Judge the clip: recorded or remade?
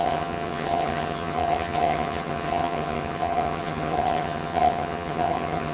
remade